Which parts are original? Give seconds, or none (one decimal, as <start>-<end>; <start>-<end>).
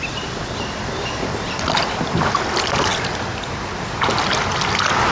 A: 0.0-5.1